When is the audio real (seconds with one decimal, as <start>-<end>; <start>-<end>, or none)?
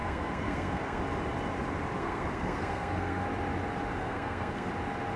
1.0-2.0; 3.2-4.0; 4.7-5.2